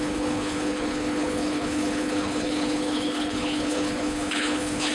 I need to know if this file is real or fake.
fake